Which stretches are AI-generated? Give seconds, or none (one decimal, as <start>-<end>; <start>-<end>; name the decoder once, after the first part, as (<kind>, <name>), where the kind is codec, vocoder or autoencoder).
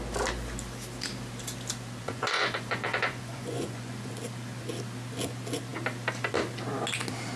2.0-4.1 (vocoder, Vocos)